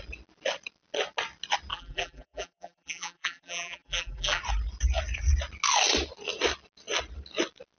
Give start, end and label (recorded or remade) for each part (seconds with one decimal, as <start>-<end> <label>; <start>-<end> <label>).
0.0-1.7 recorded; 1.7-4.4 remade; 4.4-7.8 recorded